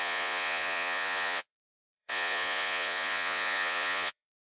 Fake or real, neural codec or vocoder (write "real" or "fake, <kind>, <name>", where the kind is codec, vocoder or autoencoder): fake, vocoder, Vocos